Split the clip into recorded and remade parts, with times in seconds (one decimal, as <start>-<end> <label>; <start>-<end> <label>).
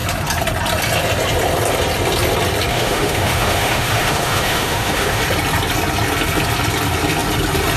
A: 0.0-2.7 recorded; 2.7-5.2 remade; 5.2-7.8 recorded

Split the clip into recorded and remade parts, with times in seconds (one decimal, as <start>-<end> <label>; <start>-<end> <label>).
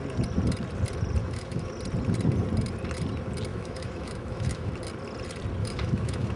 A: 0.0-1.2 recorded; 1.2-1.7 remade; 1.7-3.5 recorded; 3.5-4.7 remade; 4.7-5.6 recorded; 5.6-6.4 remade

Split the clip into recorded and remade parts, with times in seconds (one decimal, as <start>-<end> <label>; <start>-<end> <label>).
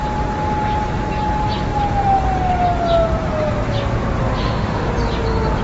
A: 0.0-4.4 recorded; 4.4-4.9 remade; 4.9-5.6 recorded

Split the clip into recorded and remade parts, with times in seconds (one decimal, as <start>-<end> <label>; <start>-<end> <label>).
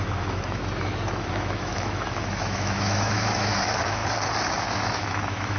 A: 0.0-4.0 remade; 4.0-4.6 recorded; 4.6-5.6 remade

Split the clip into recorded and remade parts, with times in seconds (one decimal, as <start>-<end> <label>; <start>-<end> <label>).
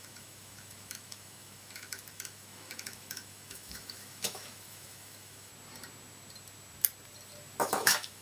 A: 0.0-5.5 remade; 5.5-7.6 recorded; 7.6-8.2 remade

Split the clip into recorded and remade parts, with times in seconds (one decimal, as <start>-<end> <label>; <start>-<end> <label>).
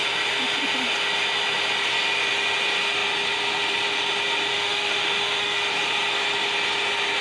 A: 0.0-4.5 recorded; 4.5-5.7 remade; 5.7-7.2 recorded